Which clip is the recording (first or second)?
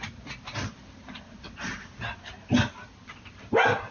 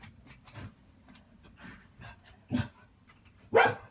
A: first